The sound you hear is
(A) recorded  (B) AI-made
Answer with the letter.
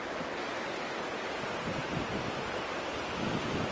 A